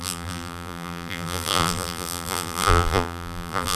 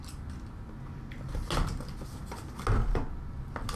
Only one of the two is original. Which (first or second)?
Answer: second